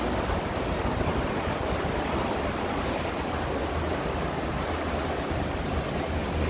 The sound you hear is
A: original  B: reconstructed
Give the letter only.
A